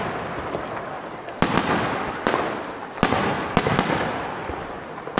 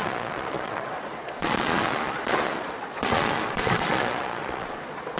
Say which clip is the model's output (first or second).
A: second